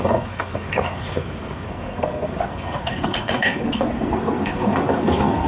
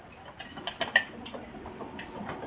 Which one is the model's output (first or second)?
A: first